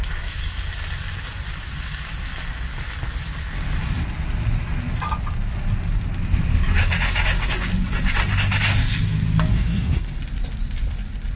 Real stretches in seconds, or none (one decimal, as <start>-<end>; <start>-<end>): 0.0-9.5; 10.2-11.4